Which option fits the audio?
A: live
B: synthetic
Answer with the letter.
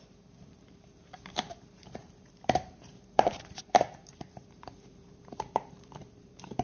B